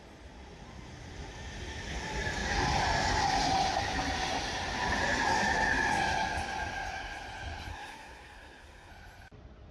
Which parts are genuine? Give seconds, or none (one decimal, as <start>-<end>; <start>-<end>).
0.0-7.7; 8.9-9.7